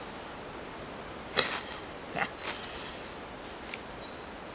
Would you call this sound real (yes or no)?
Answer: yes